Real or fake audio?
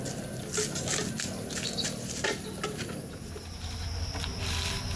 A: real